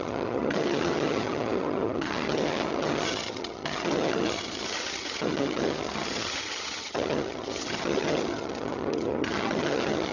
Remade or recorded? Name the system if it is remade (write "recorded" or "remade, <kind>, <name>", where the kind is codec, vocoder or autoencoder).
remade, vocoder, HiFi-GAN